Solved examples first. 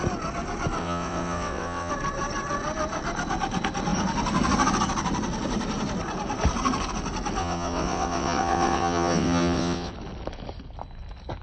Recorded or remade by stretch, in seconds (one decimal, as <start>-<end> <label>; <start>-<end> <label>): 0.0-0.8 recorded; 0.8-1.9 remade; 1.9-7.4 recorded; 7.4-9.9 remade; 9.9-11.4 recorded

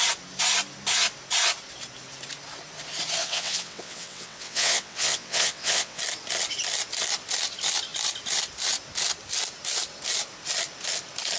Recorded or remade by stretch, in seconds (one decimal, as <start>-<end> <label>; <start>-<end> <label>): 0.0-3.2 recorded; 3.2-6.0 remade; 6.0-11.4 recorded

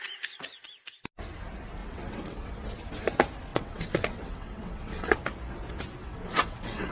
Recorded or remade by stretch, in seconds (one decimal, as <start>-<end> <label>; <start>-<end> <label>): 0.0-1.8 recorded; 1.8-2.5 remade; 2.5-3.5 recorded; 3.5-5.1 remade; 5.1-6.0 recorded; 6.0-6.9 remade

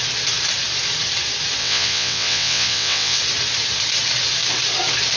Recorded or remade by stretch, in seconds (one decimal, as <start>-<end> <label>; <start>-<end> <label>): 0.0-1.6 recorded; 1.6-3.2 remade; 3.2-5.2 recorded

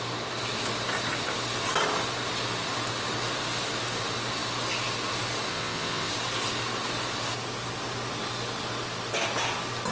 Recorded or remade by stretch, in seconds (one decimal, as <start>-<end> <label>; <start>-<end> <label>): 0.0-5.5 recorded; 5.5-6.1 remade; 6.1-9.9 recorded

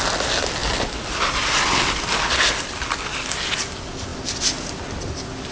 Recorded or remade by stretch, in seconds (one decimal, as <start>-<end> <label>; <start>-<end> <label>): 0.0-5.5 recorded

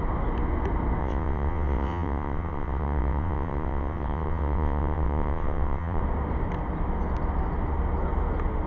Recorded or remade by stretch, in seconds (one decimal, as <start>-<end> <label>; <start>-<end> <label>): 0.0-1.0 recorded; 1.0-6.0 remade; 6.0-8.7 recorded

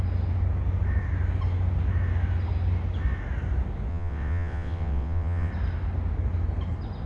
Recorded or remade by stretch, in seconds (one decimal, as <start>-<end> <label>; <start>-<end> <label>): 0.0-3.9 recorded; 3.9-5.5 remade; 5.5-7.1 recorded